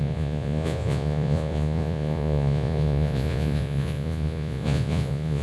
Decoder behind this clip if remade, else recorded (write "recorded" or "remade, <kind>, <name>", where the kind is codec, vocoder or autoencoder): remade, vocoder, Vocos